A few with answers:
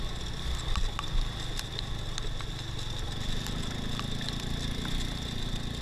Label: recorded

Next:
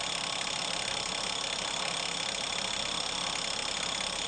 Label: recorded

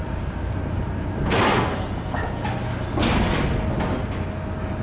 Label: recorded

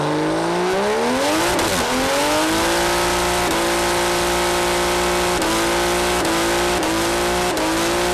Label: recorded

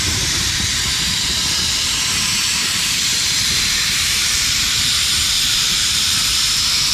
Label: remade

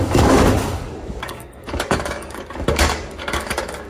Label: remade